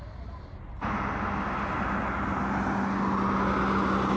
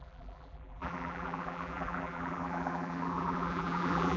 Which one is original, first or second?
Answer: first